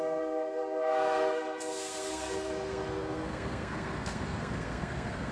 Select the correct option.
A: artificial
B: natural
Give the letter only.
A